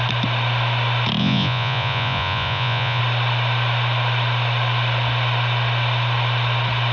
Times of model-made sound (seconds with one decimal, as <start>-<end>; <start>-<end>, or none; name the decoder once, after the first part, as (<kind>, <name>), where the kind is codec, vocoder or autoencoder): 1.2-3.0 (vocoder, Vocos)